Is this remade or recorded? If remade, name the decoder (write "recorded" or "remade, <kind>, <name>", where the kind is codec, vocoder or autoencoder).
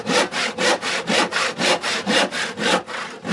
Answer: recorded